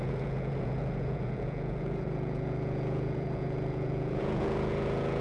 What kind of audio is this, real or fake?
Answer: fake